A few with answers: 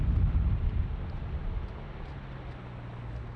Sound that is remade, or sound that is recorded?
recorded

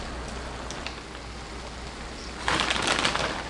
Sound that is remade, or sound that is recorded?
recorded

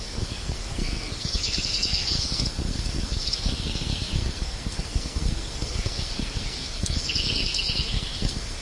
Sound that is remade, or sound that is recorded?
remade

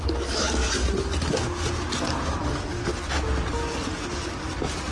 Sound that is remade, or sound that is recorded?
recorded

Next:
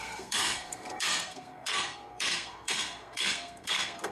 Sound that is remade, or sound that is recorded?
remade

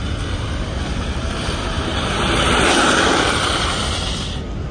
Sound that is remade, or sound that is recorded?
recorded